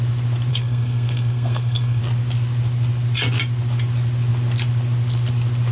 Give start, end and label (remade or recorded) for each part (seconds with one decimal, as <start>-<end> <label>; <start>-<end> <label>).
0.0-0.5 recorded; 0.5-2.0 remade; 2.0-5.7 recorded